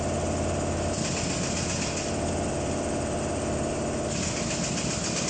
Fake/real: real